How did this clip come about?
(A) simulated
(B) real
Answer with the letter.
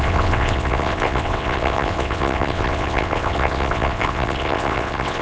A